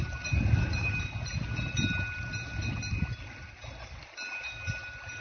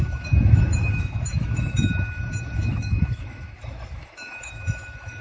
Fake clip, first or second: second